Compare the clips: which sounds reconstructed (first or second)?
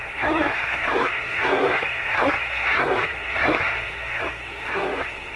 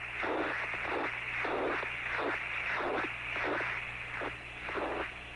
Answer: first